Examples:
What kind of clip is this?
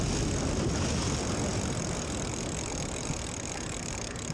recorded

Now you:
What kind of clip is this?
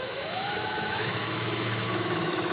remade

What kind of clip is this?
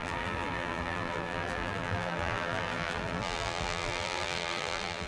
remade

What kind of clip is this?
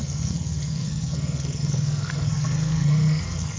remade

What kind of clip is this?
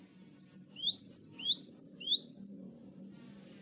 remade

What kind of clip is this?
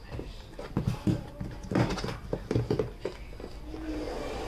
recorded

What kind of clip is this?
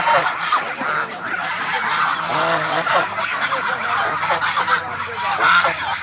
recorded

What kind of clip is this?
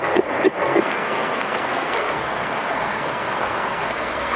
remade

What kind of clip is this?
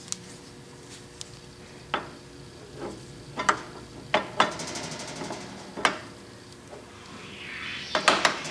recorded